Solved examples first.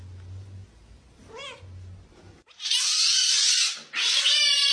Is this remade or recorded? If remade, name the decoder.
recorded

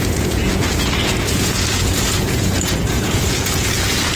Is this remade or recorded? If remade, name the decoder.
remade, vocoder, Vocos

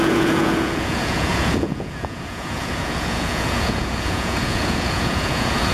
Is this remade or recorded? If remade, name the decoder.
remade, vocoder, Vocos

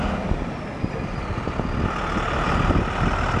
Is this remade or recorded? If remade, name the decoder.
recorded